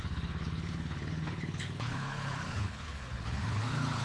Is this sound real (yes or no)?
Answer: no